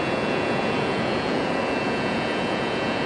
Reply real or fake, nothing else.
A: fake